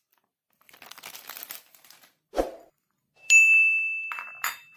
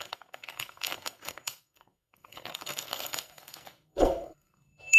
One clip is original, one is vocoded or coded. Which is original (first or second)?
first